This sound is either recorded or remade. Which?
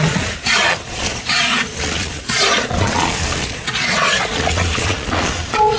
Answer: remade